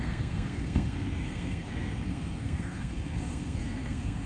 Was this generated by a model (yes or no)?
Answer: yes